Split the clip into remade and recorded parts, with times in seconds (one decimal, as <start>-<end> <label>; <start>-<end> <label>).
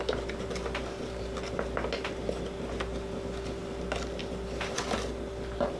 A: 0.0-5.8 recorded